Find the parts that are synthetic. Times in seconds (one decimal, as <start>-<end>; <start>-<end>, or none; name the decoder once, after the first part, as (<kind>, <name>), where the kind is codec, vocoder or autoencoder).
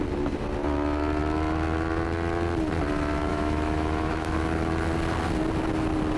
3.3-4.4 (autoencoder, DAC-VAE)